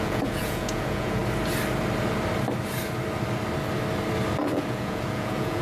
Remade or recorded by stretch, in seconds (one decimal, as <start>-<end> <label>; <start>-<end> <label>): 0.0-1.2 remade; 1.2-4.4 recorded; 4.4-5.6 remade